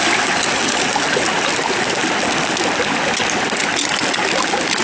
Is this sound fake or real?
real